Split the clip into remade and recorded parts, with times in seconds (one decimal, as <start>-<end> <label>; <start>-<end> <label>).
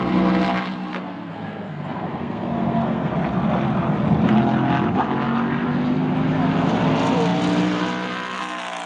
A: 0.0-0.9 recorded; 0.9-3.1 remade; 3.1-8.9 recorded